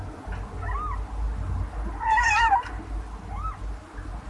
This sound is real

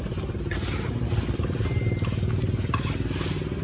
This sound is real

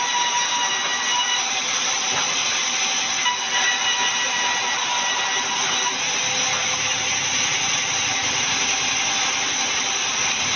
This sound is real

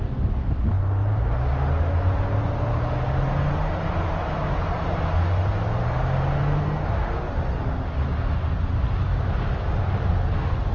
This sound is real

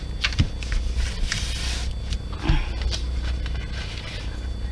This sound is real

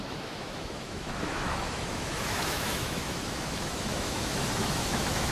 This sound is fake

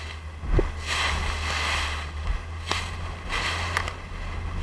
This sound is real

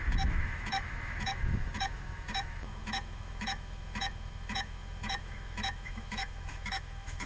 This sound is fake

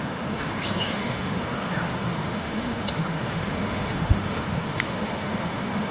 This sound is fake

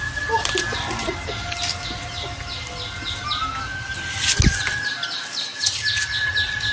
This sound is real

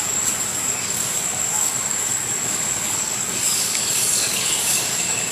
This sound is fake